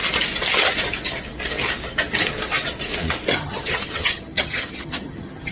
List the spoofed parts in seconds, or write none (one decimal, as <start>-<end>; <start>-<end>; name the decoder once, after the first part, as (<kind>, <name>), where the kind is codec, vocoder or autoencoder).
3.3-5.5 (vocoder, HiFi-GAN)